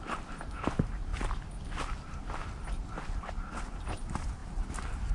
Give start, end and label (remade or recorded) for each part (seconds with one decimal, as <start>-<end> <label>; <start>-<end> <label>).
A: 0.0-5.1 recorded